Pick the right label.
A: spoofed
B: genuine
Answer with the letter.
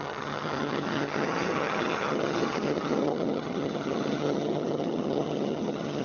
A